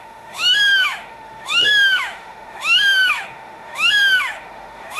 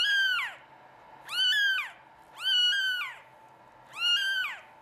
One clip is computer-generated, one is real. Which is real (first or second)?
second